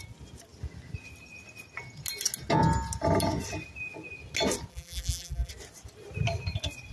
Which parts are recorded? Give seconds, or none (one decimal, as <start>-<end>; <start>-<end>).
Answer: 0.0-4.7; 5.5-6.9